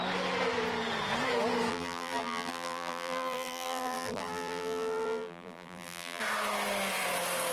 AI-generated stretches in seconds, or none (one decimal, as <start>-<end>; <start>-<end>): 1.7-6.2